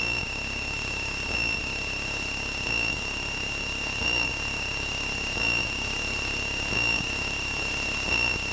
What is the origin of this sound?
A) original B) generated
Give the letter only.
A